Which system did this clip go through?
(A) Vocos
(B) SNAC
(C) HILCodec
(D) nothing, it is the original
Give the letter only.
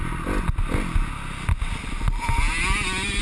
D